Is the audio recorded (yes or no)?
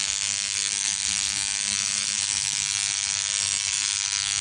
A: no